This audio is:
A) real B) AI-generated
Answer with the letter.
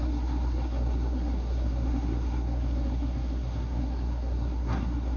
B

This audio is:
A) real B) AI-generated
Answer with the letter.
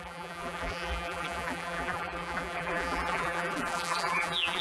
B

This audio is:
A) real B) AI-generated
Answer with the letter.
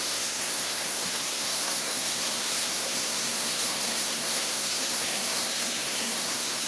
B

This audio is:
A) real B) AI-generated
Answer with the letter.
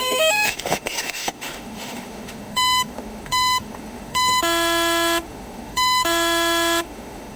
B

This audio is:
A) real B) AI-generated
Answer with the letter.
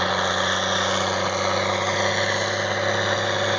A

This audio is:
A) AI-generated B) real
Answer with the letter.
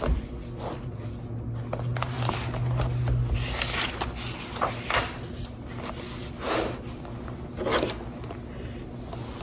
B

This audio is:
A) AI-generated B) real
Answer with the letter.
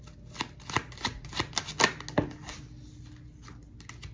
B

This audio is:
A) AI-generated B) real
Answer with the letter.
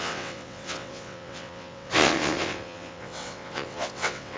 A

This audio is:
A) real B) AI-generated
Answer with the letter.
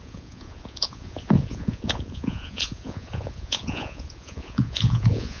B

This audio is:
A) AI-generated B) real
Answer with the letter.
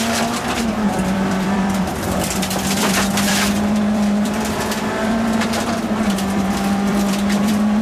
A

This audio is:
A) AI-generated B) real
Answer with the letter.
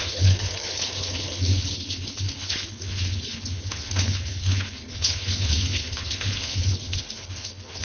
A